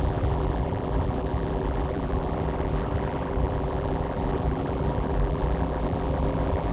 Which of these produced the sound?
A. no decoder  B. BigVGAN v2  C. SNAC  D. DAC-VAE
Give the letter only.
B